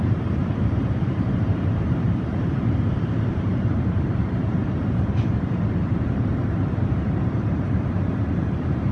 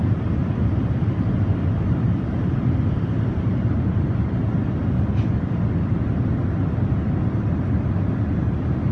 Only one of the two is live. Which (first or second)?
second